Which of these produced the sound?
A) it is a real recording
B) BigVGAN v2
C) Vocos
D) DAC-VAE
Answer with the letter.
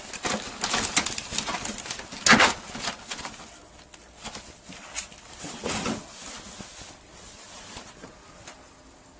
A